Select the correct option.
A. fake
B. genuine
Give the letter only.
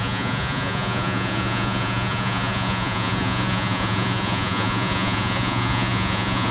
A